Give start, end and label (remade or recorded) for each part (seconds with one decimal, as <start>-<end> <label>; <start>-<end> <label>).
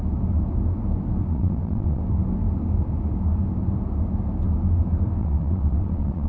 0.0-1.3 recorded; 1.3-2.0 remade; 2.0-5.2 recorded; 5.2-6.3 remade